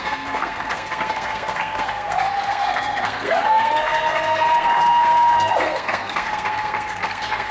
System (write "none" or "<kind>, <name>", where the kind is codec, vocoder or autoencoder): codec, SNAC